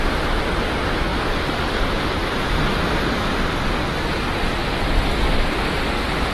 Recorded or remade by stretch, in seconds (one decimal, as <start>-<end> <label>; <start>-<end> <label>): 0.0-6.3 recorded